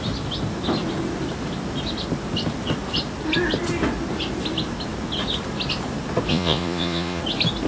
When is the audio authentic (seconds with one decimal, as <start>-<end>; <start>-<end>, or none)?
0.0-6.3; 7.2-7.7